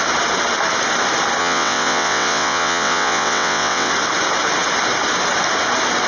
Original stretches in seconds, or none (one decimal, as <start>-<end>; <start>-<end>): 0.0-1.4; 3.9-6.1